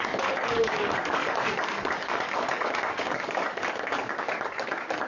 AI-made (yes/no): yes